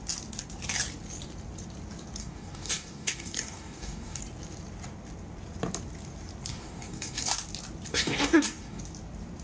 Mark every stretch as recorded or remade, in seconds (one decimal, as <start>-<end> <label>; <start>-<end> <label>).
0.0-2.2 recorded; 2.2-4.2 remade; 4.2-6.5 recorded; 6.5-7.3 remade; 7.3-7.9 recorded; 7.9-8.8 remade; 8.8-9.4 recorded